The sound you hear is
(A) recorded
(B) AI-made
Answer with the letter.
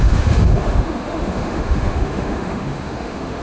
B